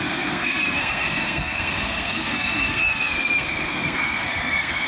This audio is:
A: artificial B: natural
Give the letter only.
A